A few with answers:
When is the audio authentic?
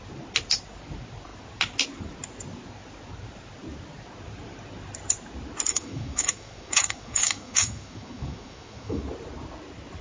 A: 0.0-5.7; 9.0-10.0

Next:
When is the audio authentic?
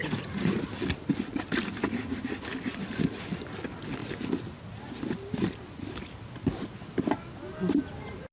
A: 0.6-8.3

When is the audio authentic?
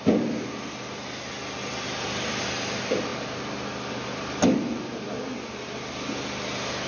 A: 0.0-6.9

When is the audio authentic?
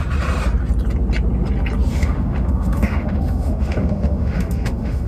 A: 0.0-1.9